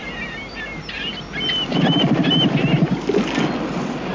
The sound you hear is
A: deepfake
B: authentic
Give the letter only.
B